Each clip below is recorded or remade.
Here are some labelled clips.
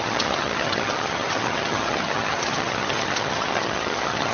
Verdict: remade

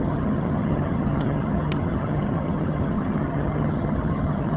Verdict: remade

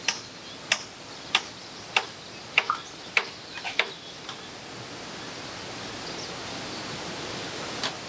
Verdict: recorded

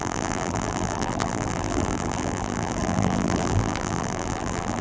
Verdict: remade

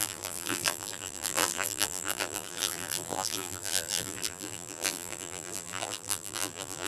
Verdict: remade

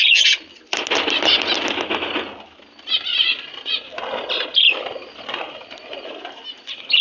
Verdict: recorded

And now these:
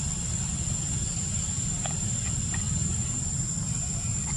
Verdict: recorded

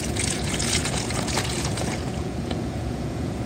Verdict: remade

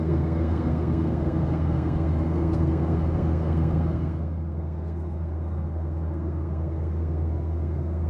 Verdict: remade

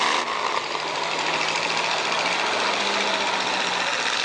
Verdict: recorded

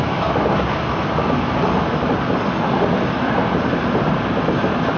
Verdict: recorded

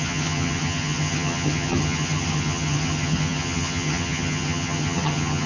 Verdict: remade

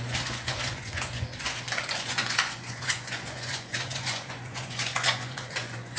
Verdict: remade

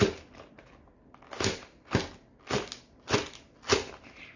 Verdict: recorded